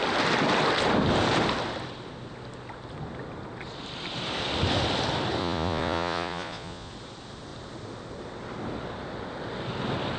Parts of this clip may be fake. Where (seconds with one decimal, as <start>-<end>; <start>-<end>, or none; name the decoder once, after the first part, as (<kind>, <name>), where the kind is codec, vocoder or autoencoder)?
5.4-6.9 (vocoder, Vocos)